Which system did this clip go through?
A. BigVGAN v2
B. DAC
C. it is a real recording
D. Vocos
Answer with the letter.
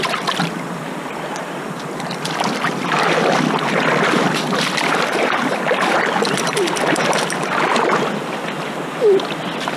C